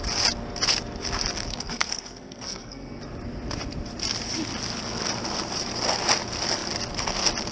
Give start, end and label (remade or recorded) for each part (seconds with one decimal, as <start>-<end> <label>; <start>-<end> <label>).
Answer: 0.0-1.5 recorded; 1.5-3.0 remade; 3.0-7.5 recorded